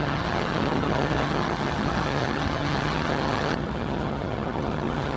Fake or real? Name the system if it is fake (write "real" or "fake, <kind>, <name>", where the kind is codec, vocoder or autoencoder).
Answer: fake, vocoder, HiFi-GAN